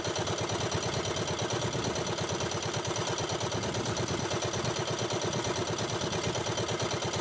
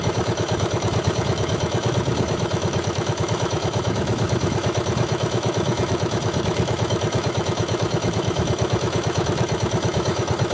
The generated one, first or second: second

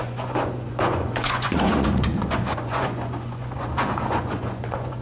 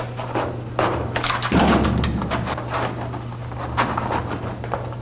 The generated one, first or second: first